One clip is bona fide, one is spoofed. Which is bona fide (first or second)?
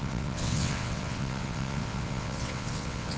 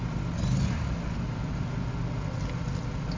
second